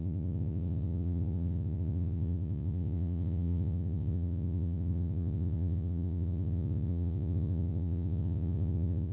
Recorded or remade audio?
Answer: remade